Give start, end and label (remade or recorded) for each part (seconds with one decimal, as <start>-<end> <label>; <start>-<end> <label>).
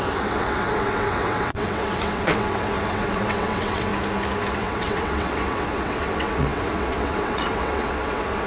0.0-3.9 remade; 3.9-4.5 recorded; 4.5-8.5 remade